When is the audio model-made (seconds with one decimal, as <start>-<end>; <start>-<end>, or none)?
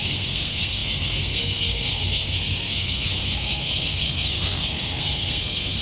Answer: 0.0-5.8